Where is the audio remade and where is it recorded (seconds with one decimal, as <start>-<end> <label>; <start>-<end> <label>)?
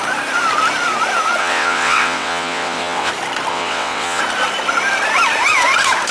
0.0-1.4 recorded; 1.4-3.1 remade; 3.1-3.5 recorded; 3.5-4.2 remade; 4.2-6.1 recorded